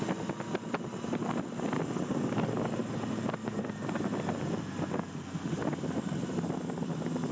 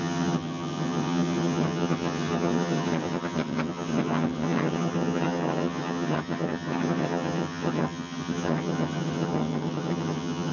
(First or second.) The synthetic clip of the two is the second